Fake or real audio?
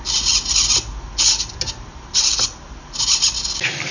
real